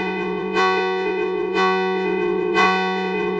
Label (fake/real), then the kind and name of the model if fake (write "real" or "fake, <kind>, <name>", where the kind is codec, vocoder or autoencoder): fake, vocoder, Vocos